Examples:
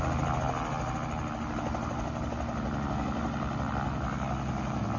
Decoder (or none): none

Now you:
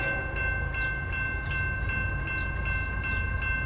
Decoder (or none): none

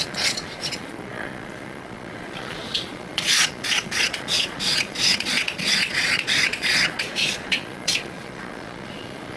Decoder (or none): vocoder, Vocos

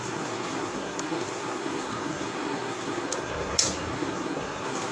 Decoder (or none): codec, SNAC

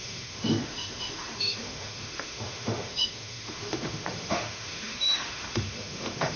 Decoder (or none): autoencoder, DAC-VAE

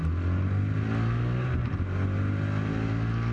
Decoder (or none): none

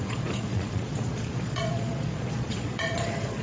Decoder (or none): vocoder, Vocos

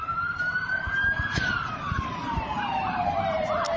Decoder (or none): vocoder, BigVGAN v2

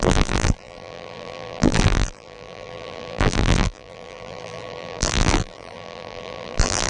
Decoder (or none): vocoder, BigVGAN v2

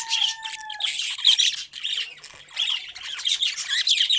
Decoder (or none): none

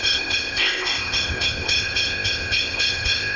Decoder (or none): codec, ZipCodec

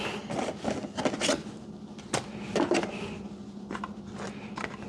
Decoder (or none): none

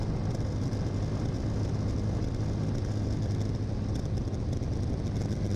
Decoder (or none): none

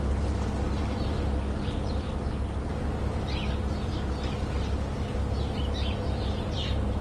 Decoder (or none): none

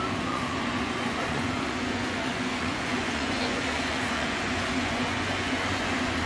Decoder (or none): vocoder, Vocos